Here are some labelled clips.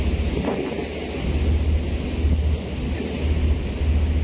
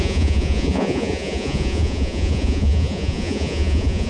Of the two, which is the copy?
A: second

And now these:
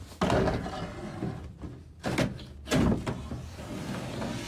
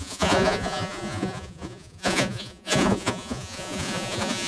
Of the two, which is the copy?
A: second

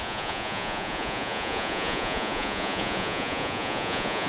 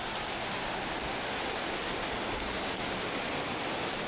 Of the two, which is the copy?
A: first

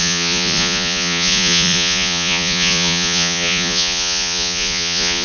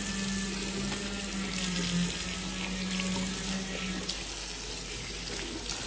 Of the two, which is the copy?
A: first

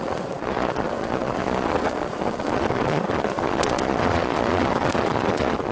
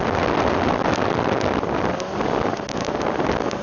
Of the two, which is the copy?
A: first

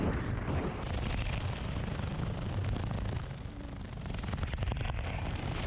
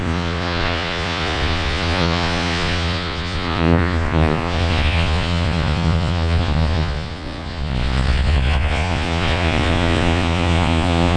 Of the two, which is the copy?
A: second